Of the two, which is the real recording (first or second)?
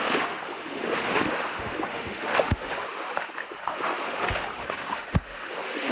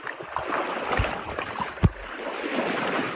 second